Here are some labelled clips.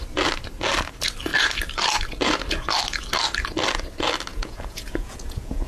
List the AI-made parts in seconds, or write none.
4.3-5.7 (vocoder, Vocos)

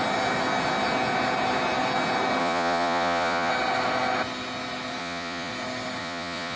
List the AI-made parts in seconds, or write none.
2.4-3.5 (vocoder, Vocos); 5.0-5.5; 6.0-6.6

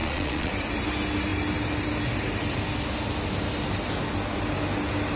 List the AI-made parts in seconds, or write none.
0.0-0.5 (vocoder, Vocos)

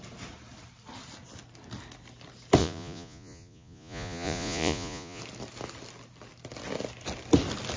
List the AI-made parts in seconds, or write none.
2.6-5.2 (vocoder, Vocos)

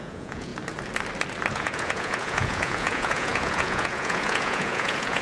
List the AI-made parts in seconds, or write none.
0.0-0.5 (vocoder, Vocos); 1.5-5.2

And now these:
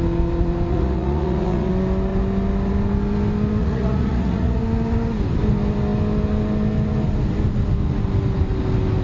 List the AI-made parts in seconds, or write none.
0.7-1.7 (vocoder, Vocos); 3.6-4.6

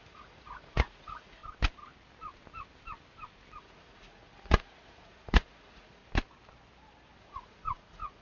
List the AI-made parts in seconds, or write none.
0.0-1.4 (vocoder, Vocos); 3.6-6.0; 7.2-8.2

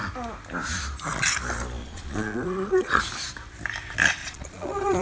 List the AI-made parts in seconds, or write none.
1.8-3.0 (vocoder, Vocos); 4.2-5.0